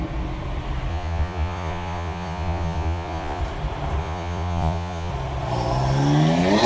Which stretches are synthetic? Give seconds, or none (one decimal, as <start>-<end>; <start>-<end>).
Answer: 0.9-3.4; 4.0-5.1